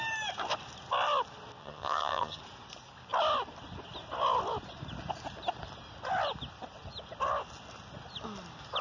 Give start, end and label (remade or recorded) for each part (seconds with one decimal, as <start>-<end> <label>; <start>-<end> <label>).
0.0-1.6 recorded; 1.6-2.4 remade; 2.4-8.8 recorded